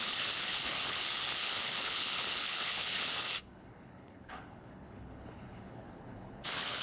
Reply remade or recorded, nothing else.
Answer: remade